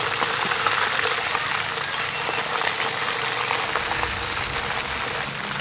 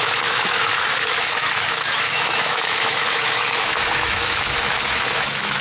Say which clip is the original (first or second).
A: first